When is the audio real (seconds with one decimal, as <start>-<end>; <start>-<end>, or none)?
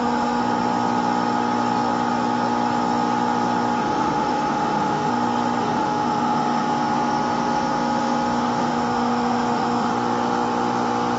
0.4-3.8; 5.1-5.6; 9.9-11.2